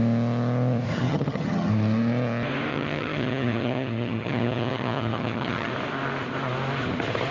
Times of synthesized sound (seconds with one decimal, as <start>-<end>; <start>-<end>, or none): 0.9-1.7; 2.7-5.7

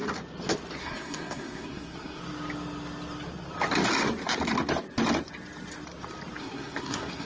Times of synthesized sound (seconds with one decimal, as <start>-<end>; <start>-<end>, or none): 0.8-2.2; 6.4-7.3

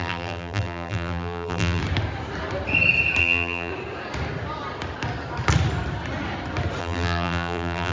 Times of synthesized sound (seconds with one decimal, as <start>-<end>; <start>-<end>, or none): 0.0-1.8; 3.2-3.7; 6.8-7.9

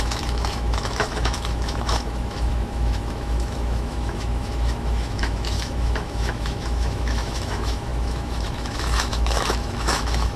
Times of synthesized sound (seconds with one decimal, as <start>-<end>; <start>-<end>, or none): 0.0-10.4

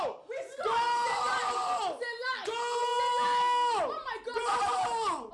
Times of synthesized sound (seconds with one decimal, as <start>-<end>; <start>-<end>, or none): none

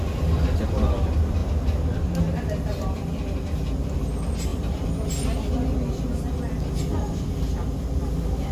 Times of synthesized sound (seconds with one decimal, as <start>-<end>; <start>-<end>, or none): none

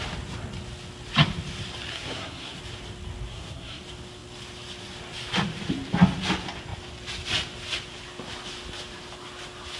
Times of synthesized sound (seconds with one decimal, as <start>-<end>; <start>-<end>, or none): 1.9-2.6; 3.3-3.8

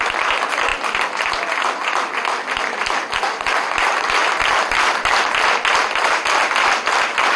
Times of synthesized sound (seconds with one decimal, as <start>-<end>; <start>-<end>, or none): none